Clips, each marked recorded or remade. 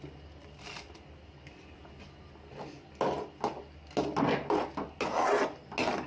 recorded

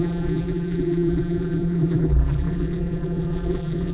remade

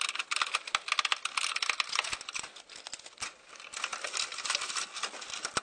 recorded